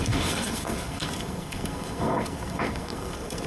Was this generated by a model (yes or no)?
yes